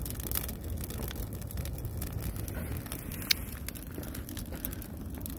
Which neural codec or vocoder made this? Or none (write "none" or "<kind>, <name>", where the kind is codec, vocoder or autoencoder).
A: none